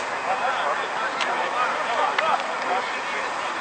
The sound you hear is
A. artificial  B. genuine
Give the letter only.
B